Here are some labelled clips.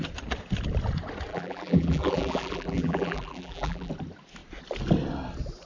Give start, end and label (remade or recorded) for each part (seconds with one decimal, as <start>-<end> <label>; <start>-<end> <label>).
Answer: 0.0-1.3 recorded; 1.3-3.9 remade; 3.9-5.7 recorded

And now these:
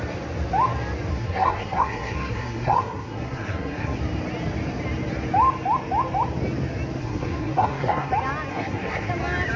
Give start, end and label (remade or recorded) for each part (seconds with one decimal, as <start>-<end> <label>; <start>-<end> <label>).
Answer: 0.0-1.1 recorded; 1.1-4.0 remade; 4.0-7.0 recorded; 7.0-8.1 remade; 8.1-8.5 recorded; 8.5-9.1 remade; 9.1-9.6 recorded

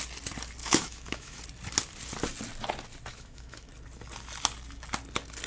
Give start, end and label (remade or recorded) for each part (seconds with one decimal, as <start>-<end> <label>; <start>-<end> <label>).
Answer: 0.0-0.6 recorded; 0.6-1.4 remade; 1.4-3.1 recorded; 3.1-3.7 remade; 3.7-5.5 recorded

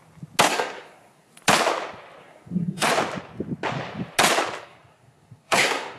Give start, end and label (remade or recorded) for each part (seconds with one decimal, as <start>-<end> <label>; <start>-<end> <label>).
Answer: 0.0-0.5 recorded; 0.5-1.3 remade; 1.3-2.2 recorded; 2.2-2.9 remade; 2.9-4.6 recorded; 4.6-6.0 remade